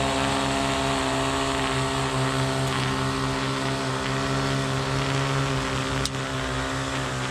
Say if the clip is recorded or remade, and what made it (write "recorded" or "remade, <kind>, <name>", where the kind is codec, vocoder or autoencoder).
recorded